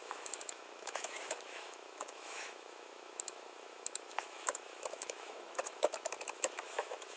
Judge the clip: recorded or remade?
remade